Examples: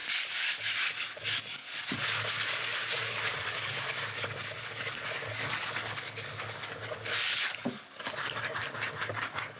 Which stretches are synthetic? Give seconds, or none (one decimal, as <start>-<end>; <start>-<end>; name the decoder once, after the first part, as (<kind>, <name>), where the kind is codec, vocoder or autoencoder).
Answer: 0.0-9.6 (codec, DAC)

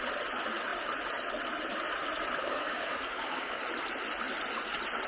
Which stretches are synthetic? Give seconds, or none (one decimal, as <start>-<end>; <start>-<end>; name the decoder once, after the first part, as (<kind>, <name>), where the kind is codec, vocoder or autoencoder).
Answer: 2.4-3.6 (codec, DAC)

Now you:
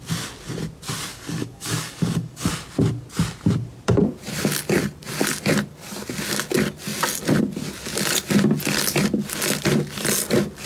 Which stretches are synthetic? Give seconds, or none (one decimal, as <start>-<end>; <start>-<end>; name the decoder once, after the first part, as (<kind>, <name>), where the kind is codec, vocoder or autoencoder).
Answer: 1.1-2.5 (codec, DAC)